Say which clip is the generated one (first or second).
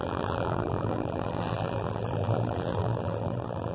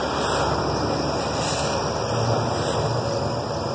first